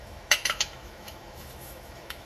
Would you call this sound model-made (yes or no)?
yes